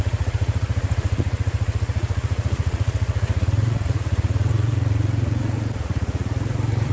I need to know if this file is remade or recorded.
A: remade